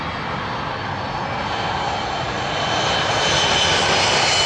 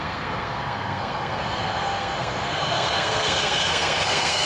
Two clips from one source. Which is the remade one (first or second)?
second